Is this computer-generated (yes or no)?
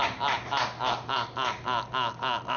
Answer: no